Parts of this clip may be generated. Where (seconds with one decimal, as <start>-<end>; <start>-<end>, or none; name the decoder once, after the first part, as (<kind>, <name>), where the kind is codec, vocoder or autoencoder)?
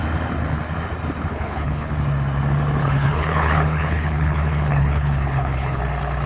1.3-1.9 (codec, HILCodec); 2.8-5.8